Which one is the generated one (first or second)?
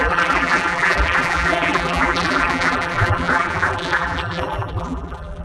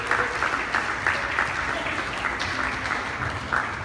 first